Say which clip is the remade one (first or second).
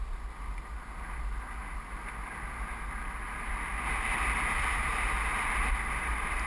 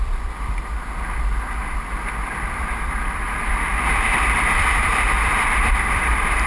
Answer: second